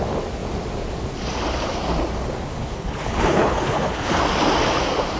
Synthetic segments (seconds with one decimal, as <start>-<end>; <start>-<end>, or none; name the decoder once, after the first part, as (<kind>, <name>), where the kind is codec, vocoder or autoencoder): 2.6-4.2 (codec, HILCodec)